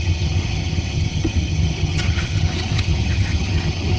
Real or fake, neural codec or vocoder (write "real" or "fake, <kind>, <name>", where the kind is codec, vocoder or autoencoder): fake, vocoder, HiFi-GAN